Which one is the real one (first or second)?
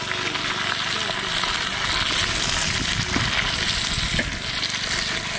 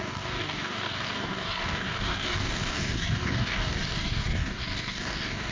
first